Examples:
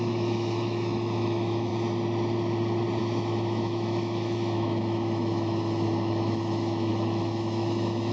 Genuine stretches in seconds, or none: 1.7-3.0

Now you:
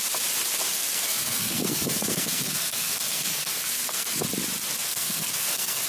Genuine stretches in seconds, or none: 0.0-0.7; 4.2-4.8

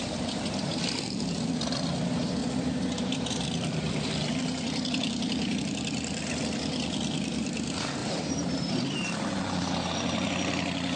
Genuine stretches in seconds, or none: 0.0-2.4; 5.6-8.0; 9.9-11.0

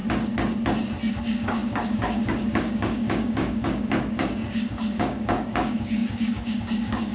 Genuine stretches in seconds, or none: 0.0-1.1

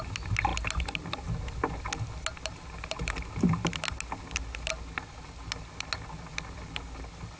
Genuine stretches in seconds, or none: 0.0-7.4